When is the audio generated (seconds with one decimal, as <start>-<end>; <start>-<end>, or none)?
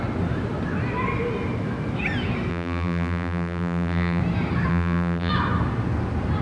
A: 2.5-4.2; 4.7-5.3